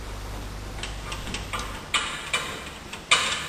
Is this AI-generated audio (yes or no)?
no